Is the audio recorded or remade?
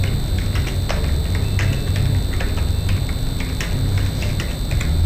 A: recorded